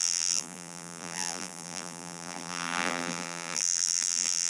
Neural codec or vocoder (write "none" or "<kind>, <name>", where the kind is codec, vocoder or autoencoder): vocoder, BigVGAN v2